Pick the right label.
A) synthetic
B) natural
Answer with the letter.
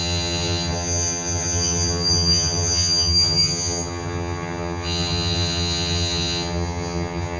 A